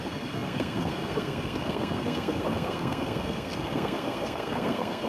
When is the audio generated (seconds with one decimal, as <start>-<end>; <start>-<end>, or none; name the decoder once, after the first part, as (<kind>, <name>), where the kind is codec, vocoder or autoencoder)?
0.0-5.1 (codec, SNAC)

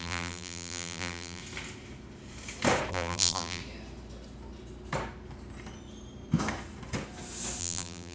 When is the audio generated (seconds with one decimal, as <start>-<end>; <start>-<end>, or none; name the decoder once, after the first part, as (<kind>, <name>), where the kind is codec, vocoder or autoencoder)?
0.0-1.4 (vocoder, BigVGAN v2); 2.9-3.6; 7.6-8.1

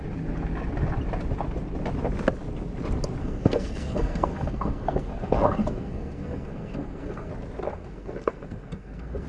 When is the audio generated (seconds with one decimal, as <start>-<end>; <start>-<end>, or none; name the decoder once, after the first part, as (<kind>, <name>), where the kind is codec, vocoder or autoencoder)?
3.2-7.3 (codec, SNAC); 7.7-9.3